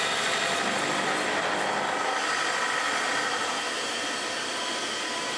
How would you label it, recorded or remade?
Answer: recorded